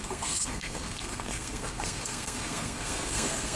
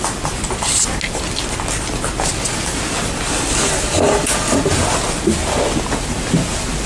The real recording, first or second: second